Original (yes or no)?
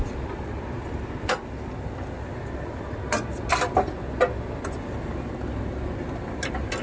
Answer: yes